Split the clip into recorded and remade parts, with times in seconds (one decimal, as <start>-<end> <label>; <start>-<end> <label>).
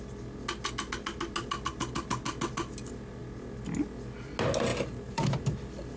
0.0-4.7 recorded; 4.7-5.4 remade; 5.4-6.0 recorded